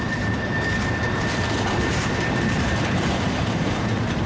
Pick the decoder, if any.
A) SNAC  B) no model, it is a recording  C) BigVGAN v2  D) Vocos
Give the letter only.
C